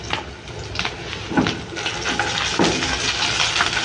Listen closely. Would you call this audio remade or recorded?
recorded